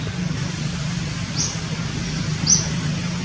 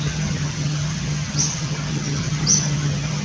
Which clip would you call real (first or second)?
first